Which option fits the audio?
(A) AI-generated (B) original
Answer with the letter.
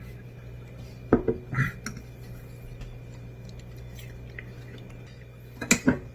B